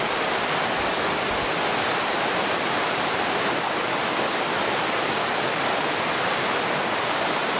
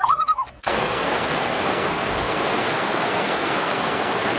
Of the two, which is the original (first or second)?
first